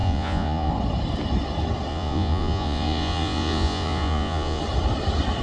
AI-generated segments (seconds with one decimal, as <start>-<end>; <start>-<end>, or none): 0.0-0.7; 1.9-4.6

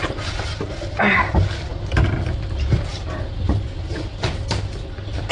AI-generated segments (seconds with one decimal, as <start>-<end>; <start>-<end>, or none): none

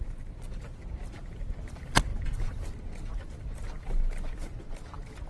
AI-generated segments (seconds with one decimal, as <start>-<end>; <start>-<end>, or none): none

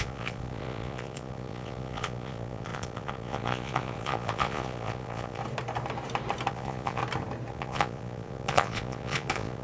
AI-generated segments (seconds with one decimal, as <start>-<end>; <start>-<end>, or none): 0.0-5.4; 6.5-7.0; 7.5-9.6

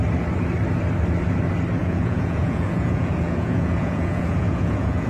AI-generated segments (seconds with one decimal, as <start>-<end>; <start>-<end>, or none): 1.8-5.1

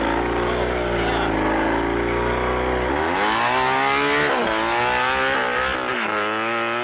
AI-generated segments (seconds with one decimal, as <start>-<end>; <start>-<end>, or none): none